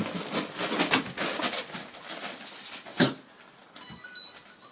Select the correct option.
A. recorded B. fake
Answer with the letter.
A